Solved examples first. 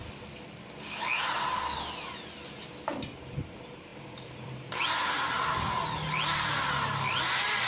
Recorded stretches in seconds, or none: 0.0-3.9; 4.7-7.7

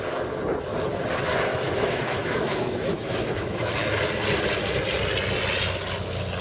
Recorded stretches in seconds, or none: 0.0-1.5; 3.7-6.4